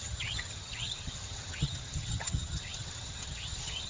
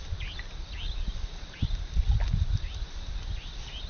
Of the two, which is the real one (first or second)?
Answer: second